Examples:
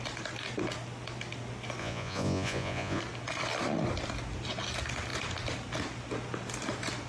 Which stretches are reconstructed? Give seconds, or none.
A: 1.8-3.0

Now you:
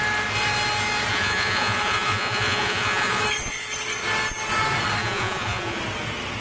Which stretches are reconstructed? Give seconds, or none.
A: 1.1-3.2; 5.0-5.8

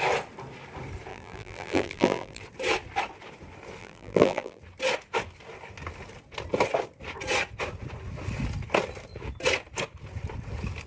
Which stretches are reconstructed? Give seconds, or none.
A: 1.1-2.4; 3.8-4.6

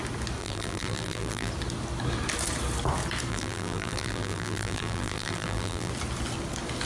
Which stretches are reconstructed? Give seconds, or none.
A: 0.4-1.5; 3.3-5.9

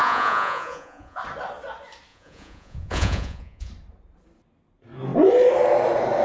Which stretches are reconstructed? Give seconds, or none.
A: 0.0-1.2; 2.1-3.7

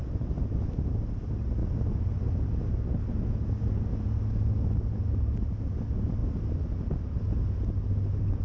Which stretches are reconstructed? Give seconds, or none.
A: none

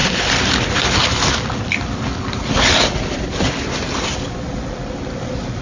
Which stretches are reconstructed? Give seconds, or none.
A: none

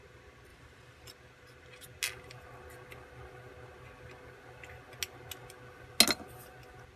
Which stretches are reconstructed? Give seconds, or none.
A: 0.5-1.1